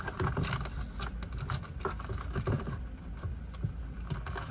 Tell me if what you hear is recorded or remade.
recorded